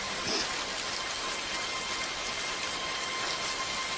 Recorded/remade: recorded